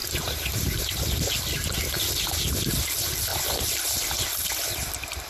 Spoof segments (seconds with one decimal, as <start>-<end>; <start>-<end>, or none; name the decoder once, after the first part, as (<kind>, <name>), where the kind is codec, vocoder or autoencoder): 0.0-1.3 (vocoder, BigVGAN v2); 3.3-4.1